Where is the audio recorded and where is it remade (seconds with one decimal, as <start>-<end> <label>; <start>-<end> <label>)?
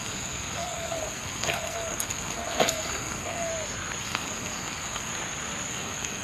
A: 0.0-3.5 remade; 3.5-4.0 recorded; 4.0-5.1 remade; 5.1-5.7 recorded; 5.7-6.2 remade